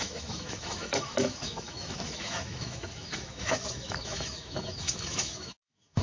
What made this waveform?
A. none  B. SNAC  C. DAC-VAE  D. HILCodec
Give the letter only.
C